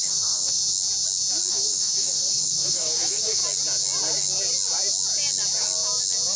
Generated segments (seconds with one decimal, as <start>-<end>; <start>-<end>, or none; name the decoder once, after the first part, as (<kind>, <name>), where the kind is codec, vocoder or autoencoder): 0.0-0.6 (autoencoder, DAC-VAE); 1.5-3.4